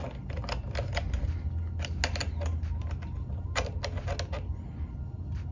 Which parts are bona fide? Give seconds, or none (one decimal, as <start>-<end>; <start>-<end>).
0.0-5.5